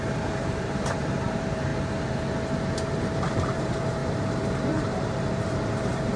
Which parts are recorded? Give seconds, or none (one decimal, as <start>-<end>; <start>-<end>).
1.7-2.9